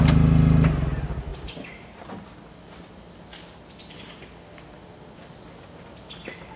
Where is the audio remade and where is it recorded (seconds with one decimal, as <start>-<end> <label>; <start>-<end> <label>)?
0.0-6.6 recorded